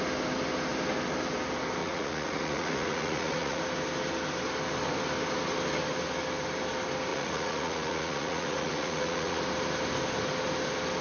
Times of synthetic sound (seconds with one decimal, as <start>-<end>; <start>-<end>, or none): 1.8-3.6; 7.1-9.4

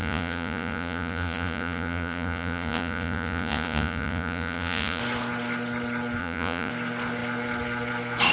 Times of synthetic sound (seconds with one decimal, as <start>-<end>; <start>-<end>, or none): 0.0-5.0; 6.2-6.7

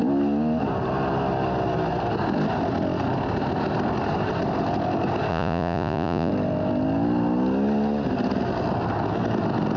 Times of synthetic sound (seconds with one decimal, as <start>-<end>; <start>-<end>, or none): 5.3-6.3

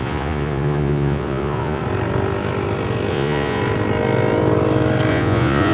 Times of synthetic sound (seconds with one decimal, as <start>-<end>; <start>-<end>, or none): 0.0-1.8; 3.1-3.6; 5.1-5.7

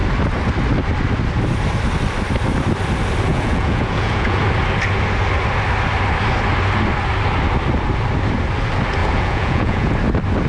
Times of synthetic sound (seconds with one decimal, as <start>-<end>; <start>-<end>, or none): 3.3-4.4; 9.0-9.9